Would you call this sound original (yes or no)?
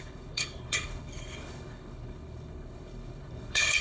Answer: no